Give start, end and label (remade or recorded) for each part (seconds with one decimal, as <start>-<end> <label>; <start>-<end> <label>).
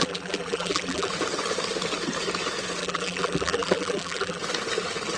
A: 0.0-1.1 remade; 1.1-2.8 recorded; 2.8-4.4 remade; 4.4-5.2 recorded